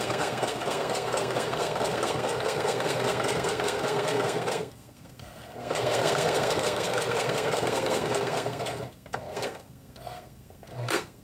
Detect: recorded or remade remade